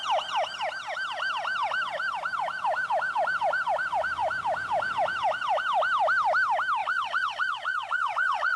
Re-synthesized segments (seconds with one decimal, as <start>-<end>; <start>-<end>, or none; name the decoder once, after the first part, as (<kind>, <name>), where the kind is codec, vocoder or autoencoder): 6.8-8.6 (vocoder, Vocos)

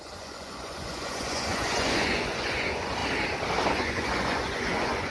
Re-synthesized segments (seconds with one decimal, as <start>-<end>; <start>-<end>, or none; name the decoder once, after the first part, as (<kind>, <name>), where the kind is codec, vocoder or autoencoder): 0.0-3.0 (vocoder, Vocos); 3.7-5.1

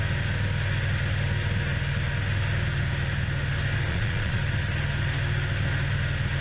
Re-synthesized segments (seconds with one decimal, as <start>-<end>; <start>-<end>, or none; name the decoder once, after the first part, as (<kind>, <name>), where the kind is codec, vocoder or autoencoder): 3.9-4.4 (vocoder, Vocos)

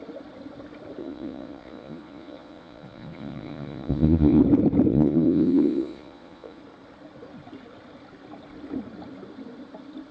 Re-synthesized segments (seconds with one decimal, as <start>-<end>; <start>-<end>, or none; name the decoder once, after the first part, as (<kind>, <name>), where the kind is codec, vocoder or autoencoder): 1.0-4.4 (vocoder, Vocos); 4.9-6.6